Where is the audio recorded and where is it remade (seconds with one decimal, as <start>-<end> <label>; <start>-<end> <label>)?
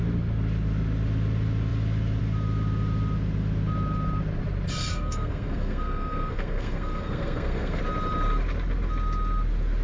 0.0-4.9 recorded; 4.9-7.8 remade; 7.8-9.8 recorded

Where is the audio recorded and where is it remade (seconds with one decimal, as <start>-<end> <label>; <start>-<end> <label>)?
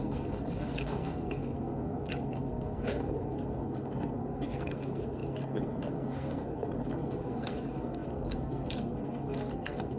0.0-10.0 remade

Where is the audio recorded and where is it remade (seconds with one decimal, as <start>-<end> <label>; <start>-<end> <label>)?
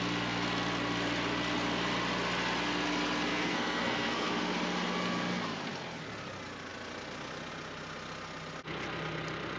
0.0-3.3 recorded; 3.3-4.3 remade; 4.3-9.6 recorded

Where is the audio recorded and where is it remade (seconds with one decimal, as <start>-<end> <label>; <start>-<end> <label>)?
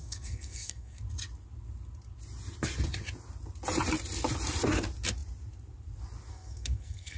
0.0-1.0 remade; 1.0-6.3 recorded; 6.3-7.2 remade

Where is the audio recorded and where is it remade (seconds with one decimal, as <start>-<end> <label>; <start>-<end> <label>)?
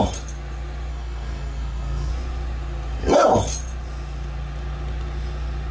0.0-0.9 recorded; 0.9-2.1 remade; 2.1-5.7 recorded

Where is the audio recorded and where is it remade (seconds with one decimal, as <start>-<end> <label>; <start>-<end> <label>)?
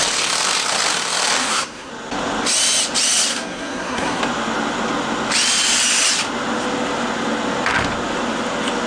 0.0-1.4 recorded; 1.4-1.9 remade; 1.9-3.3 recorded; 3.3-4.2 remade; 4.2-8.9 recorded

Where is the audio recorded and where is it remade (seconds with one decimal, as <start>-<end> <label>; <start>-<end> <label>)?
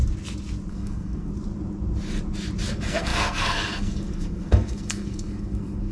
0.0-0.7 recorded; 0.7-1.3 remade; 1.3-2.7 recorded; 2.7-5.9 remade